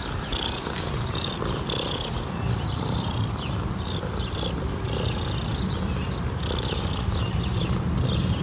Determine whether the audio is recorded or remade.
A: recorded